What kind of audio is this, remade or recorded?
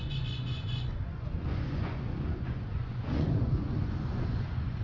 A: remade